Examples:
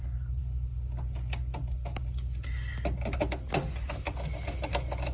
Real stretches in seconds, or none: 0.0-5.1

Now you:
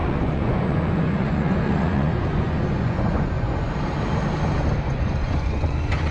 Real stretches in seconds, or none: 3.7-4.9